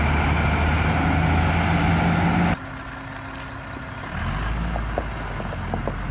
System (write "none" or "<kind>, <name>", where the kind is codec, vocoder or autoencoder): none